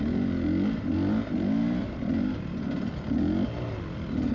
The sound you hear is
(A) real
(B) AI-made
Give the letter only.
A